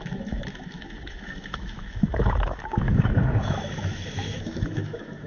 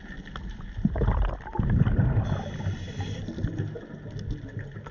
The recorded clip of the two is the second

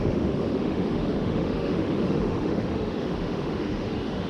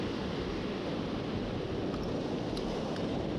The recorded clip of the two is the second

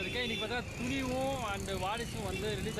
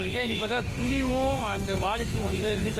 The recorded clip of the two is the first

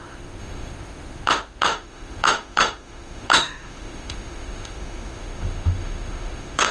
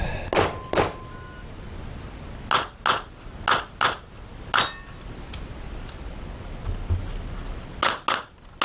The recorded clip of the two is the second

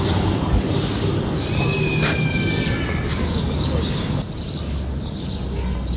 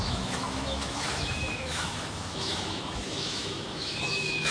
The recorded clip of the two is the first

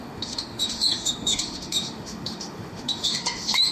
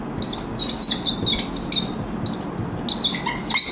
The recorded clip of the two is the second